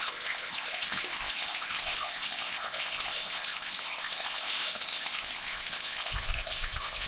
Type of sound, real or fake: fake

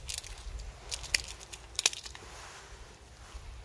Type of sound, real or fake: real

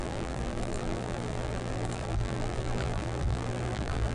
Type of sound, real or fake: fake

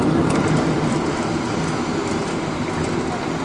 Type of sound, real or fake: real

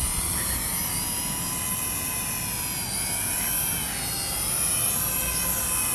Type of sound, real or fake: real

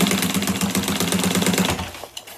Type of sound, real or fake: real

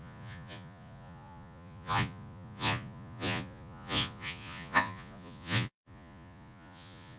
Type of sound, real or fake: fake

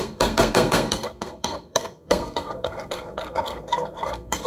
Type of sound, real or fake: fake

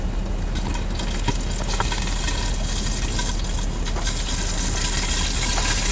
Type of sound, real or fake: real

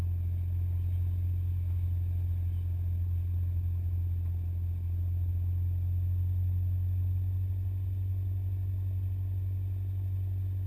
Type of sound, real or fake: real